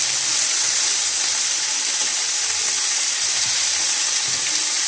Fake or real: real